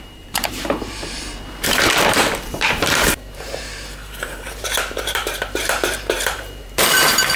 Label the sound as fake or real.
fake